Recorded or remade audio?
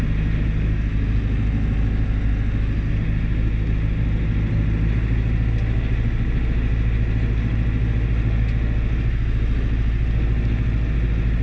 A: recorded